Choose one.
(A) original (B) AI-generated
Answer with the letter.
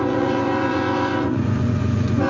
B